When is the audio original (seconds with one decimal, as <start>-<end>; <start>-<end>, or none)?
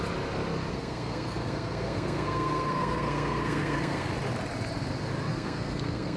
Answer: 0.0-0.7; 4.1-5.3